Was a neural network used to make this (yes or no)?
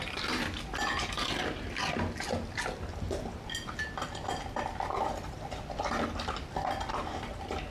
no